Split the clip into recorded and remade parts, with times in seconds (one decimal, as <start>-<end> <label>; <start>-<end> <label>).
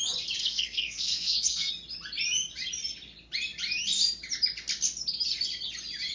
0.0-0.4 recorded; 0.4-1.7 remade; 1.7-6.1 recorded